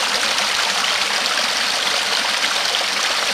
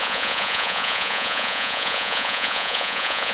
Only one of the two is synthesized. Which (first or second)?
second